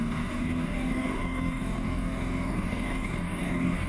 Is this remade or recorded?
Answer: remade